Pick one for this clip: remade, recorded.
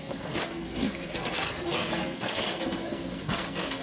remade